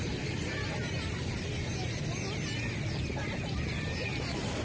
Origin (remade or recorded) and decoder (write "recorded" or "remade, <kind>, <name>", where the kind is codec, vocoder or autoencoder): recorded